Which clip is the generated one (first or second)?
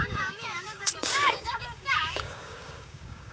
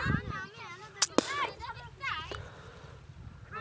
first